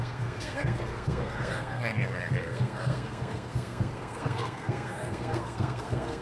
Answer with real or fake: fake